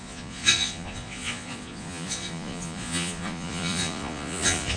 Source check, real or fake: fake